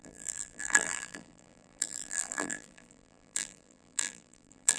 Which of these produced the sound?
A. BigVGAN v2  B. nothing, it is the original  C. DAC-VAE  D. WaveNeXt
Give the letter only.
A